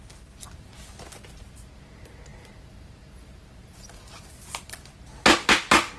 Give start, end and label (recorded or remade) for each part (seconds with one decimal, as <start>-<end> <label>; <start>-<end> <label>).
0.0-6.0 recorded